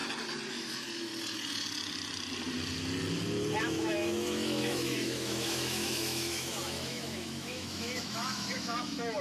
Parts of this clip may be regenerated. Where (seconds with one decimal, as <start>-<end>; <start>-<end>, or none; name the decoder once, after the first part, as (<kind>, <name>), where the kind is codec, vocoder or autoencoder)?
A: 0.5-1.1 (autoencoder, DAC-VAE); 3.6-9.2